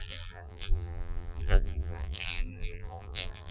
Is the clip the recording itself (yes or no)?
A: no